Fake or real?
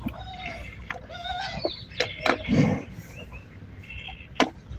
real